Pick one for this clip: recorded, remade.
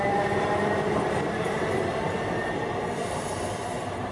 recorded